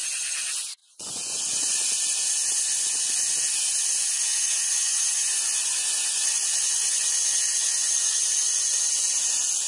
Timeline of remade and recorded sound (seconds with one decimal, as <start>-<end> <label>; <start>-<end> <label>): 0.0-0.8 recorded; 0.8-2.0 remade; 2.0-4.3 recorded; 4.3-8.3 remade; 8.3-9.7 recorded

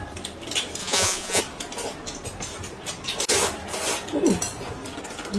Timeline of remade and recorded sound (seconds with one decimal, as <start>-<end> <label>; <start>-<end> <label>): 0.0-0.8 recorded; 0.8-1.4 remade; 1.4-5.4 recorded

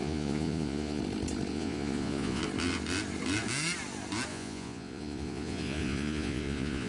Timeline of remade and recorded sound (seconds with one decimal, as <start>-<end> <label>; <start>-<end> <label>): 0.0-1.0 remade; 1.0-1.5 recorded; 1.5-2.4 remade; 2.4-4.3 recorded; 4.3-6.9 remade

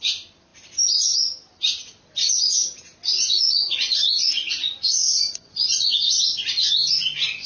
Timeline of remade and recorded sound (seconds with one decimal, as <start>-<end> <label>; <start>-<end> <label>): 0.0-3.1 recorded; 3.1-6.2 remade; 6.2-7.5 recorded

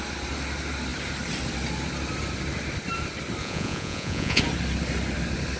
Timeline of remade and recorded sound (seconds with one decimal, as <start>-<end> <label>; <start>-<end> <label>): 0.0-3.4 recorded; 3.4-4.4 remade; 4.4-5.6 recorded

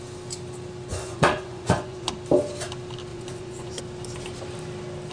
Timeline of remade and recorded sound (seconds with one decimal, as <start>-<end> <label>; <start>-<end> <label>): 0.0-0.9 recorded; 0.9-2.1 remade; 2.1-3.1 recorded; 3.1-3.8 remade; 3.8-5.1 recorded

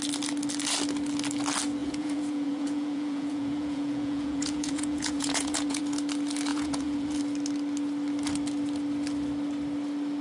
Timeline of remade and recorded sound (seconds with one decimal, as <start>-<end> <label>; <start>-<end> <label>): 0.0-1.8 recorded; 1.8-5.8 remade; 5.8-6.5 recorded; 6.5-7.2 remade; 7.2-10.2 recorded